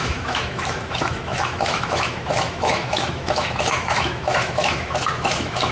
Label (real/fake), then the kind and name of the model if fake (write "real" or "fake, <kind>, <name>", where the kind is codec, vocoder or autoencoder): fake, autoencoder, DAC-VAE